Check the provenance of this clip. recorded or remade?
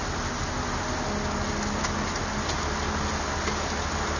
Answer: recorded